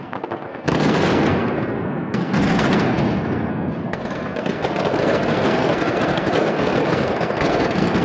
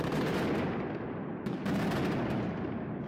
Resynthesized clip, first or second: first